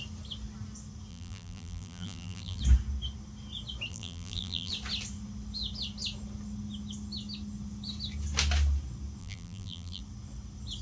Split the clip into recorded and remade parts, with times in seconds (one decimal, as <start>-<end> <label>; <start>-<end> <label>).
0.0-1.1 recorded; 1.1-2.6 remade; 2.6-3.9 recorded; 3.9-4.7 remade; 4.7-9.2 recorded; 9.2-10.0 remade; 10.0-10.8 recorded